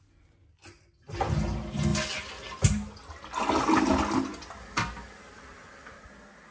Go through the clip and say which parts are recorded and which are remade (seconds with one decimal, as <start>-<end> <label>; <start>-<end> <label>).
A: 0.0-6.5 recorded